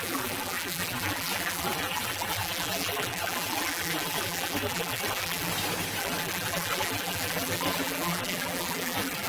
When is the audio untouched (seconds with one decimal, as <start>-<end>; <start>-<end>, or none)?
5.5-6.0

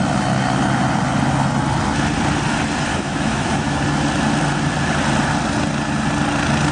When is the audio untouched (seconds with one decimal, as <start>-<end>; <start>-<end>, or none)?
0.0-2.9; 3.8-6.7

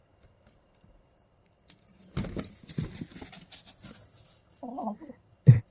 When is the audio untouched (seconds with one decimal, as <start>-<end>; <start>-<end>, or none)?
2.0-5.0

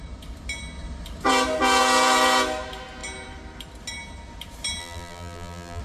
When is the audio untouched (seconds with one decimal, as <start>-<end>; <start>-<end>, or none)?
0.0-4.8

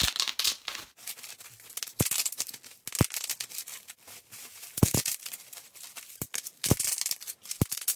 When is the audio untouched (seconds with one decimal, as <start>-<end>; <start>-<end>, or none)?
0.0-3.7; 6.2-8.0

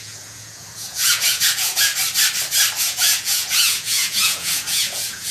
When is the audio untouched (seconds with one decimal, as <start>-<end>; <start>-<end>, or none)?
1.9-2.8